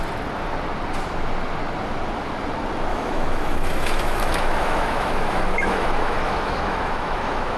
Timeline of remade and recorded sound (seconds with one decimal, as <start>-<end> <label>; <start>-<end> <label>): 0.0-2.9 recorded; 2.9-7.6 remade